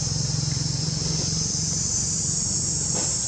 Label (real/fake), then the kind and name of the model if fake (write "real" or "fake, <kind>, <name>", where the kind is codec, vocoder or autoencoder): real